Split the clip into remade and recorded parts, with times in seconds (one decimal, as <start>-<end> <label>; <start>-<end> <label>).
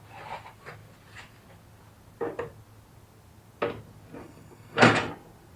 0.0-4.2 recorded; 4.2-4.9 remade; 4.9-5.6 recorded